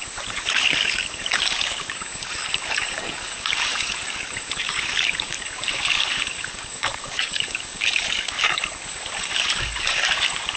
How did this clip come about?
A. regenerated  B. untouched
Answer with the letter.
A